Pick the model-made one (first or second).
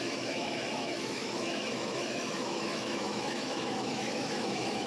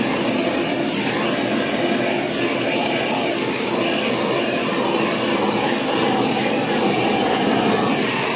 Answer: first